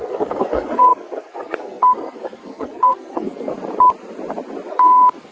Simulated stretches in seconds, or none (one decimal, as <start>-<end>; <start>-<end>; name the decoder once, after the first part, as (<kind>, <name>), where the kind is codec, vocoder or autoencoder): 0.0-3.5 (codec, SNAC); 4.7-5.3